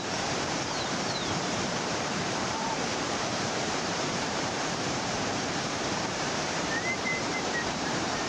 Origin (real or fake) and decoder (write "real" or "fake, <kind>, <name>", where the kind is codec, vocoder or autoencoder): fake, vocoder, BigVGAN v2